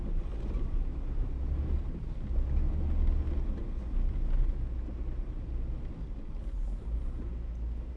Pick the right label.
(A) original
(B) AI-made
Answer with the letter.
A